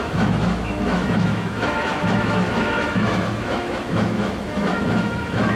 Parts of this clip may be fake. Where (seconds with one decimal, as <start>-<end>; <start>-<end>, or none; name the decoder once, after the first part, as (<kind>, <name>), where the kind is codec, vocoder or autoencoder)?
0.0-5.6 (autoencoder, DAC-VAE)